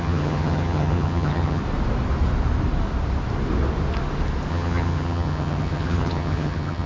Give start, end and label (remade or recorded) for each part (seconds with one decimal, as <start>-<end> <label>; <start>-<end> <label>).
0.0-1.6 remade; 1.6-4.5 recorded; 4.5-6.9 remade